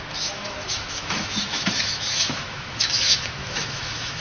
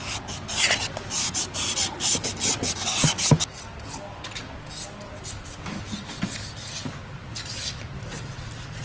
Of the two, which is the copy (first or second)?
first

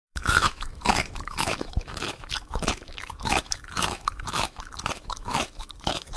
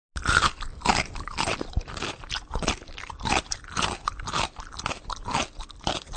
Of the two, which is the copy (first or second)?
first